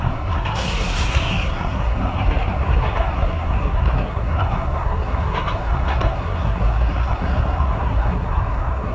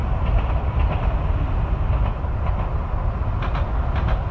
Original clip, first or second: second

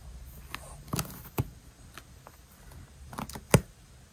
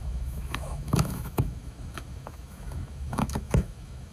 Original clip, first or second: first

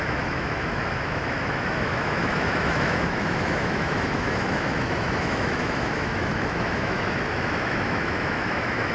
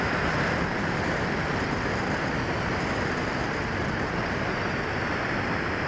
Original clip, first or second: second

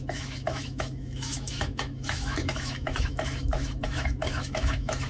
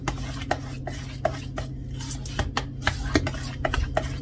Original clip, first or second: second